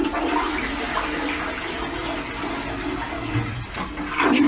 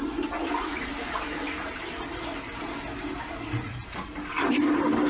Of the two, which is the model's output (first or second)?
second